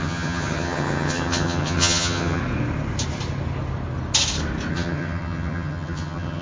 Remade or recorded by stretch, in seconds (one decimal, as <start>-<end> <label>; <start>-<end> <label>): 0.0-2.4 remade; 2.4-4.7 recorded; 4.7-6.4 remade